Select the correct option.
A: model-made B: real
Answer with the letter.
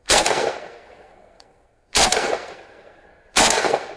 A